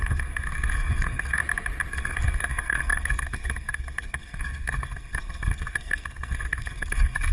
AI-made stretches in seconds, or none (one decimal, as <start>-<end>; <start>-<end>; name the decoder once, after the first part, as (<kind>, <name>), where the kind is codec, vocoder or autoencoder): 0.0-1.4 (codec, SNAC); 1.9-7.3